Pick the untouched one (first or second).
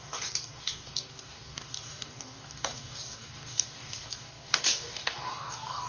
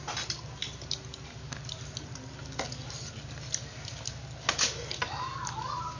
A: second